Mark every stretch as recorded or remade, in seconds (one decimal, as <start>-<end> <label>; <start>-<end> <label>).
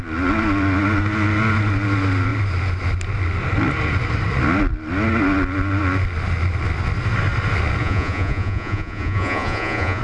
0.0-7.8 recorded; 7.8-10.0 remade